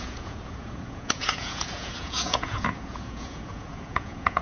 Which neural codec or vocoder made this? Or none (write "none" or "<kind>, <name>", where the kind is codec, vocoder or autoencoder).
vocoder, Vocos